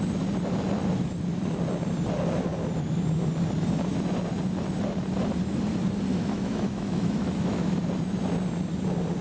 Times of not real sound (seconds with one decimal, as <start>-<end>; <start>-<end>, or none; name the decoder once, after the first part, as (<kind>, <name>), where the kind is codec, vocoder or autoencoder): 6.1-7.7 (autoencoder, DAC-VAE)